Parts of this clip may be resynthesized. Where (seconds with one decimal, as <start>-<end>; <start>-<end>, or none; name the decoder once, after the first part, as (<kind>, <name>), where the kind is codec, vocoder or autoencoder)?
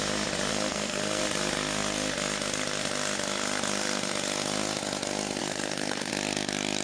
0.5-1.2 (codec, SNAC); 5.4-6.1